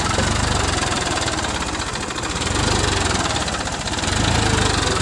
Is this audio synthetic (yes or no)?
no